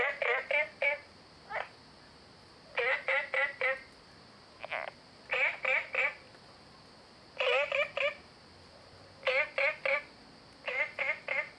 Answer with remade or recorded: recorded